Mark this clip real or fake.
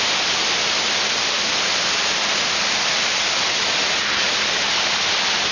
real